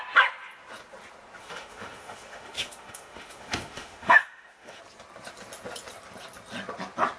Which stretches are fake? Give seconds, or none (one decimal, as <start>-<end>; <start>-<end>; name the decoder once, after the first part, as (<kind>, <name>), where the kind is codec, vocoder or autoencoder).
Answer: 1.4-4.8 (autoencoder, DAC-VAE)